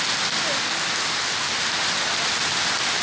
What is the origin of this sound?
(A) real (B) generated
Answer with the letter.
A